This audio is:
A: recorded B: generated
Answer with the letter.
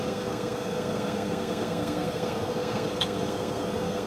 B